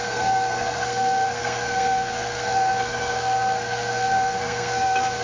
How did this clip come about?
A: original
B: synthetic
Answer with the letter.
B